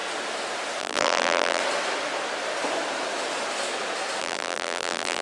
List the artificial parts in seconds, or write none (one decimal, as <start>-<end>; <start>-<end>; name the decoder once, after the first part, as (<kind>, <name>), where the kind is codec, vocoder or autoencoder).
0.8-1.6 (vocoder, BigVGAN v2); 4.2-5.2